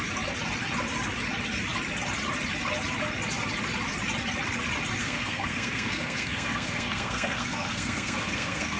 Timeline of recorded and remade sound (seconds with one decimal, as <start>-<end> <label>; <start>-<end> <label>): 0.0-5.0 recorded; 5.0-8.8 remade